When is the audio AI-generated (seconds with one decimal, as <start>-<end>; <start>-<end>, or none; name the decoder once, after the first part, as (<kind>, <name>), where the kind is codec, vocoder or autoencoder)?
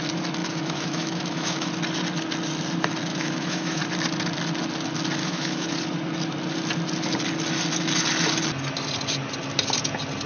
0.4-1.7 (autoencoder, DAC-VAE); 3.1-3.8; 5.2-5.7